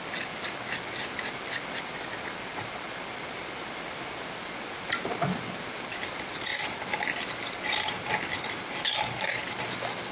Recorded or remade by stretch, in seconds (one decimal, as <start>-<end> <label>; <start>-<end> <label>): 0.0-10.1 recorded